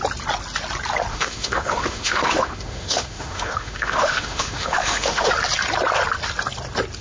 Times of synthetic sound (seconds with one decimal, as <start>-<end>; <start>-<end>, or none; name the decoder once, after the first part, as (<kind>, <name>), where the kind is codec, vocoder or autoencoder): 1.1-5.3 (autoencoder, DAC-VAE)